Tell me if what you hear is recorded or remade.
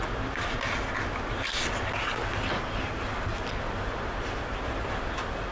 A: recorded